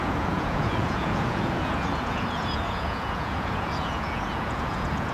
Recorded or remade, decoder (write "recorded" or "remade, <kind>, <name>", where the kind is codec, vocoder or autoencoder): remade, vocoder, Vocos